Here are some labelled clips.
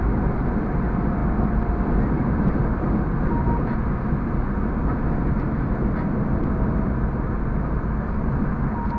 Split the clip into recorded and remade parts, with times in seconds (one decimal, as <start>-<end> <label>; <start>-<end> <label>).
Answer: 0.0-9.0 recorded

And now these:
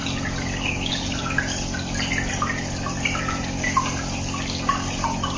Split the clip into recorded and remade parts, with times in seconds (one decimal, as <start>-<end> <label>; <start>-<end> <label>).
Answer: 0.0-5.4 recorded

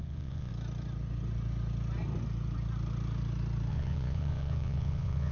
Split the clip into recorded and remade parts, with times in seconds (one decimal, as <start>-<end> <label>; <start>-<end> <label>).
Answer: 0.0-0.5 remade; 0.5-3.7 recorded; 3.7-5.3 remade

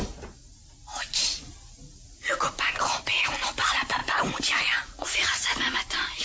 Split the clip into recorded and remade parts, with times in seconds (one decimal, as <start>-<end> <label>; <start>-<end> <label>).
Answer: 0.0-4.0 recorded; 4.0-5.6 remade; 5.6-6.2 recorded

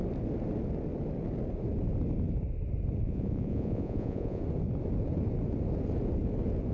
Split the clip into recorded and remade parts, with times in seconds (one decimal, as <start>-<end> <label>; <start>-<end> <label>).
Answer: 0.0-3.0 recorded; 3.0-4.4 remade; 4.4-6.7 recorded

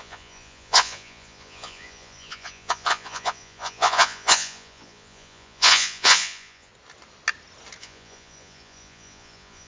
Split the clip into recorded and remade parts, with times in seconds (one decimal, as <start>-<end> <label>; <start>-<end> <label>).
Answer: 0.0-6.7 remade; 6.7-7.8 recorded; 7.8-9.7 remade